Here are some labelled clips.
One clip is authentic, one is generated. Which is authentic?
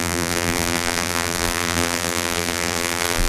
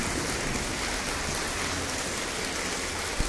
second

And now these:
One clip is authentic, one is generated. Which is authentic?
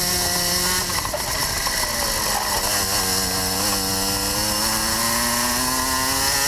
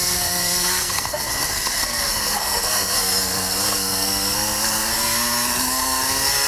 first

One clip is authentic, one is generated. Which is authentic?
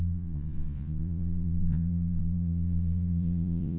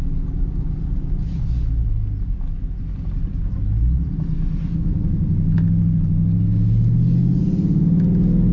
second